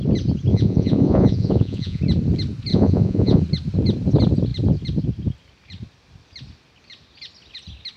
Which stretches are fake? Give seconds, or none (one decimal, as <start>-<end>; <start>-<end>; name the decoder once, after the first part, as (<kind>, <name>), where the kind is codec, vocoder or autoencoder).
0.5-2.0 (vocoder, Vocos); 2.7-3.4